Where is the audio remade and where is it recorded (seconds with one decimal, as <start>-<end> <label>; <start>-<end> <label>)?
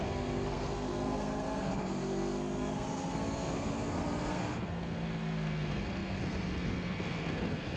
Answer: 0.0-7.8 remade